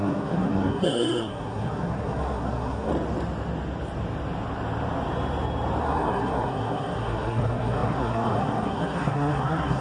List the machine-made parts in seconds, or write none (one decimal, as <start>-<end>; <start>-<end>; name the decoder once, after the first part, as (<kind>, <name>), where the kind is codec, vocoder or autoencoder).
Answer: 0.0-2.9 (codec, SNAC); 5.8-9.8